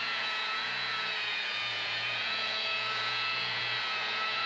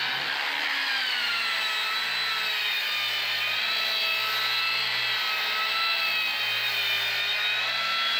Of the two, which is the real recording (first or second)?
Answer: second